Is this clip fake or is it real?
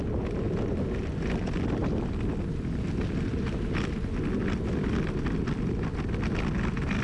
real